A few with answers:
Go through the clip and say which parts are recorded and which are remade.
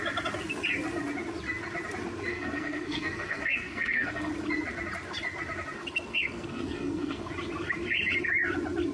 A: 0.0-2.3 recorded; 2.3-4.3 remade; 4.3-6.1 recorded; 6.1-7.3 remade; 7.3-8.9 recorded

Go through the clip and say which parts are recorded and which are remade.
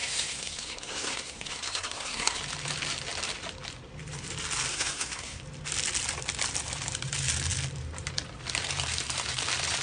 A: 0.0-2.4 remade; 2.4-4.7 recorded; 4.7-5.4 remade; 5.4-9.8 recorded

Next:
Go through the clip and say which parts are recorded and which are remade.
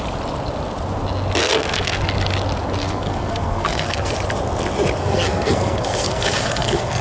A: 0.0-1.4 recorded; 1.4-2.0 remade; 2.0-2.8 recorded; 2.8-4.1 remade; 4.1-5.0 recorded; 5.0-7.0 remade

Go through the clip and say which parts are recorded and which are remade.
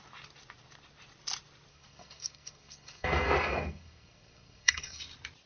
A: 0.0-1.7 recorded; 1.7-5.0 remade; 5.0-5.5 recorded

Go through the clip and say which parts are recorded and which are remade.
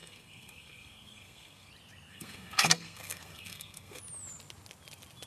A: 0.0-1.7 remade; 1.7-2.1 recorded; 2.1-4.0 remade; 4.0-5.3 recorded